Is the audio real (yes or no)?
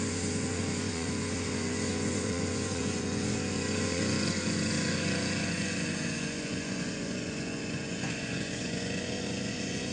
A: no